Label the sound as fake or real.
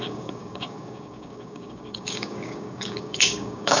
fake